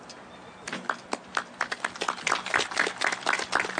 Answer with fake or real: real